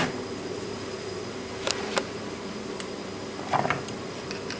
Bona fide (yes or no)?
yes